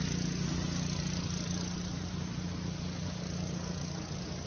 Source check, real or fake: real